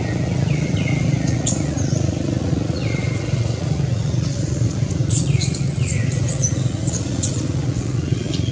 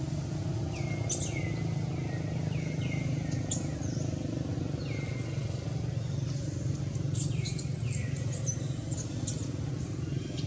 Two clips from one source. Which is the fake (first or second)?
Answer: first